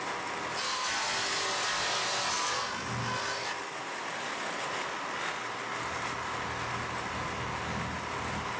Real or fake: real